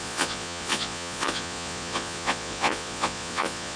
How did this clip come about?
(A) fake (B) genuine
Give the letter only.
A